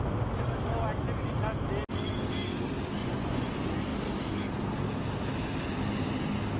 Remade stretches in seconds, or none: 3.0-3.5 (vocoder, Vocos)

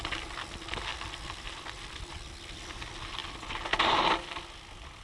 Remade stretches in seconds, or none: none

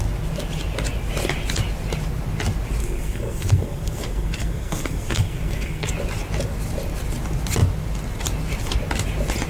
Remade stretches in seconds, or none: 2.8-5.9 (codec, SNAC)

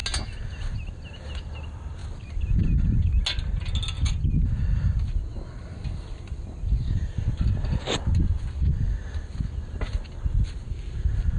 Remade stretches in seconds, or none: 5.3-7.8 (vocoder, BigVGAN v2)

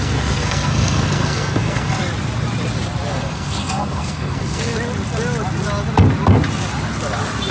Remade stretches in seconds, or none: 0.0-2.0 (codec, SNAC); 3.1-4.7

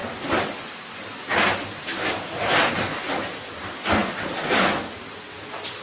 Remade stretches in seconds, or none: none

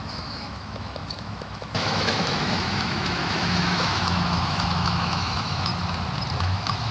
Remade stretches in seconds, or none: 0.0-5.7 (autoencoder, DAC-VAE); 6.4-6.9